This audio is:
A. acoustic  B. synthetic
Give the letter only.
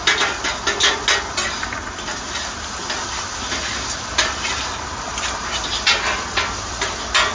A